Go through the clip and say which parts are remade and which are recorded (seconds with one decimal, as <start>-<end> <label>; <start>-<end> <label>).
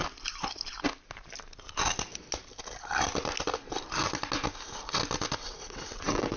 0.0-5.4 recorded; 5.4-6.4 remade